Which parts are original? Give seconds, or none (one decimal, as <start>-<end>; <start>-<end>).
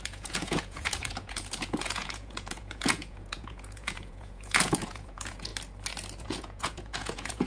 5.5-6.2